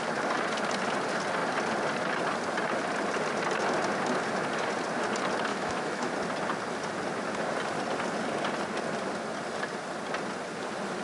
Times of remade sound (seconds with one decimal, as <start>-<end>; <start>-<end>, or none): 5.5-6.1